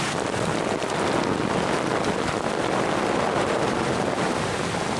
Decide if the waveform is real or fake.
real